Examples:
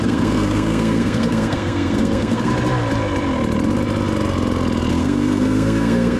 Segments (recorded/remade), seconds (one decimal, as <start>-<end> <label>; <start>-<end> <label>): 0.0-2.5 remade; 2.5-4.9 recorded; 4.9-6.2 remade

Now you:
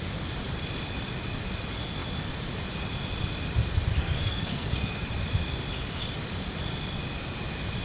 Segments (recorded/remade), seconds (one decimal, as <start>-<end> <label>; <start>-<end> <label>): 0.0-4.0 recorded; 4.0-5.0 remade; 5.0-7.8 recorded

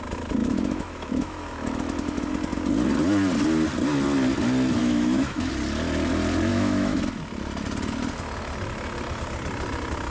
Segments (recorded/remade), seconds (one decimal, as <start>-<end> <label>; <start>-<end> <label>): 0.0-0.4 recorded; 0.4-2.2 remade; 2.2-4.8 recorded; 4.8-5.5 remade; 5.5-6.5 recorded; 6.5-7.0 remade; 7.0-10.1 recorded